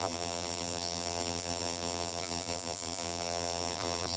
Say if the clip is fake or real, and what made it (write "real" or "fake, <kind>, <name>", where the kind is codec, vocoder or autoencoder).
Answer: fake, vocoder, BigVGAN v2